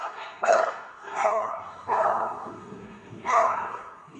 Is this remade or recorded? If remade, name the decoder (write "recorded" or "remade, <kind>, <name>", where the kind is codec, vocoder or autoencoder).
remade, codec, SNAC